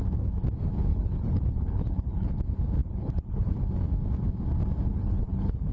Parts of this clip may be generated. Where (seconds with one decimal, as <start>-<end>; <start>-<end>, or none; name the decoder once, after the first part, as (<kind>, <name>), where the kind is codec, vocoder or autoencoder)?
0.9-2.3 (codec, HILCodec); 2.8-3.6; 4.9-5.7